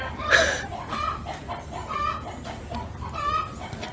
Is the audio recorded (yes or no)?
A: yes